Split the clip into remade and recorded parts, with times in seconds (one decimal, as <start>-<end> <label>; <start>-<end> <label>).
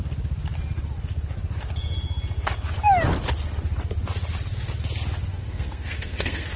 0.0-5.4 recorded; 5.4-6.6 remade